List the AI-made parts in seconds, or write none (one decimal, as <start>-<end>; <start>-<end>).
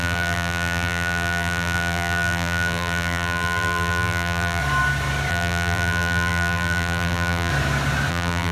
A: 0.0-4.6; 5.3-7.5; 8.1-8.5